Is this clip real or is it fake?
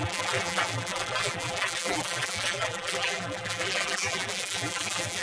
fake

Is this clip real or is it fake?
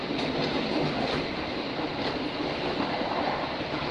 real